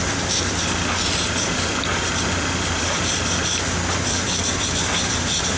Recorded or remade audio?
remade